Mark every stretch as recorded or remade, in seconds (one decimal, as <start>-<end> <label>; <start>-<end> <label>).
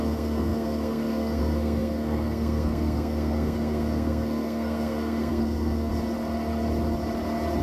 0.0-5.9 remade; 5.9-7.6 recorded